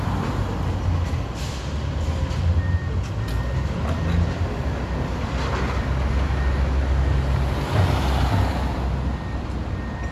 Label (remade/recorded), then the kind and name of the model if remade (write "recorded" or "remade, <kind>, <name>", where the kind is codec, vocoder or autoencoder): recorded